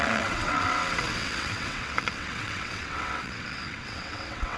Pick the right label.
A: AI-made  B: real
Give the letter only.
A